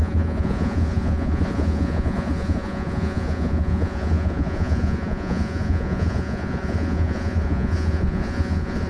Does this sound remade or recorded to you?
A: remade